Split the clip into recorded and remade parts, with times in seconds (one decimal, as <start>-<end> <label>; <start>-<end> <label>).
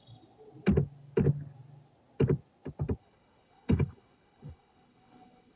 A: 0.0-3.0 recorded; 3.0-5.6 remade